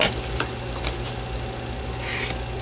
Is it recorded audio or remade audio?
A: recorded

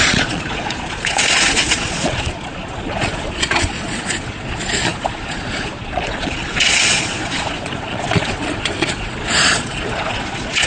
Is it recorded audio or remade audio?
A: remade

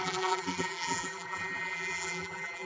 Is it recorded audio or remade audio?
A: remade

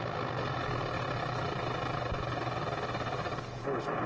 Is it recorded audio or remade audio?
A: recorded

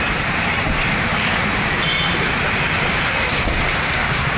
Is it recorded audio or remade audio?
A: remade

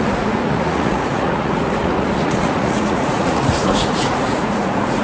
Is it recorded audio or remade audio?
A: remade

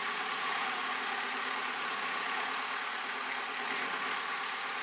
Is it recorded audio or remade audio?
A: remade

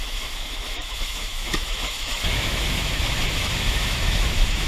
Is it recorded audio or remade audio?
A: remade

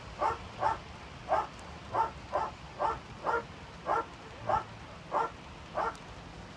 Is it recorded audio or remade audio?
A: recorded